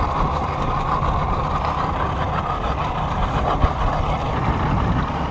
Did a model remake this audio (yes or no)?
no